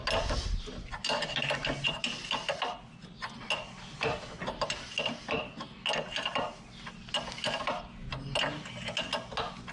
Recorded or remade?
recorded